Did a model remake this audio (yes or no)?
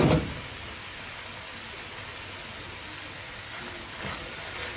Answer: no